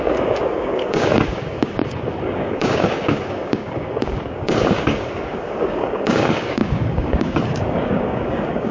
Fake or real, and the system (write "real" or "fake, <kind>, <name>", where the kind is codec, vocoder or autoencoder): fake, codec, DAC